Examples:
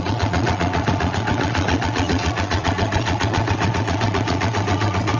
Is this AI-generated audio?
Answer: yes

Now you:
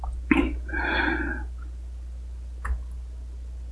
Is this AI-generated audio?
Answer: no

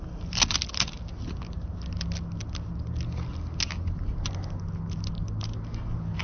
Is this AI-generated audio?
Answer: no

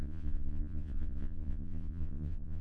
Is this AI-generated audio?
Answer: yes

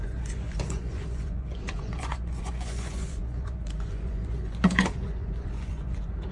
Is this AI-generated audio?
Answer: yes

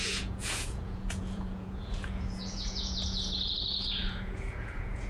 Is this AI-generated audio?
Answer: yes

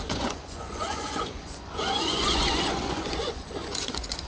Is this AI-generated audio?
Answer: yes